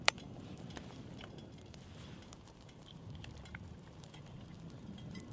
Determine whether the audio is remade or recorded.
remade